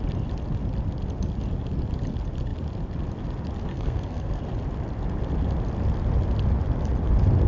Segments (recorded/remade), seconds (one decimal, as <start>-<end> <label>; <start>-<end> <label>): 0.0-3.7 recorded; 3.7-4.4 remade; 4.4-7.5 recorded